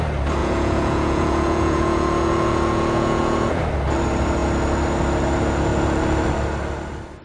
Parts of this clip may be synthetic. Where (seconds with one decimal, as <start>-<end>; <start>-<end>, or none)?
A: 0.4-3.6